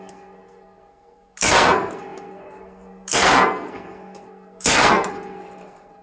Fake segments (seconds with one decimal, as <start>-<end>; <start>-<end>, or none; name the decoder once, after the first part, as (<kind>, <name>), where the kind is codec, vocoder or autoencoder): 0.0-6.0 (codec, SNAC)

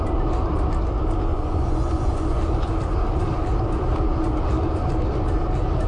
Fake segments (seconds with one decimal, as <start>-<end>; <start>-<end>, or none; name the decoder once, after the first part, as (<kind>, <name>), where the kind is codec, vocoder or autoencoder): 1.3-2.4 (vocoder, Vocos)

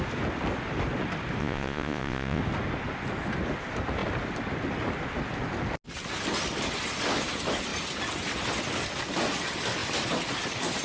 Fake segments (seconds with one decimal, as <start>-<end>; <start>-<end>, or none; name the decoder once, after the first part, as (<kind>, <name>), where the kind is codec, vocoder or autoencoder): 1.4-2.4 (vocoder, Vocos)

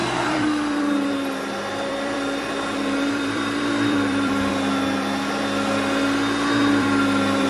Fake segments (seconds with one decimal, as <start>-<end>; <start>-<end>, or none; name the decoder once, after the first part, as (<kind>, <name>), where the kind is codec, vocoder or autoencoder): 0.0-4.5 (vocoder, BigVGAN v2); 6.6-7.5

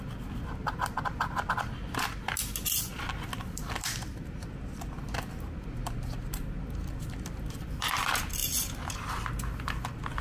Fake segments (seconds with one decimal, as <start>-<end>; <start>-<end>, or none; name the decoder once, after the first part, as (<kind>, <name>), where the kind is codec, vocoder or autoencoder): none

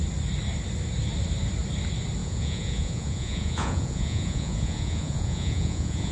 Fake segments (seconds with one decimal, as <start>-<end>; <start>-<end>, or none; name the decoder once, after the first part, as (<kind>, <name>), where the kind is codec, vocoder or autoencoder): 2.2-6.1 (vocoder, Vocos)